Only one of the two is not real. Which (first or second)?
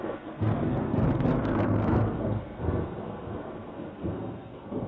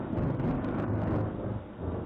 first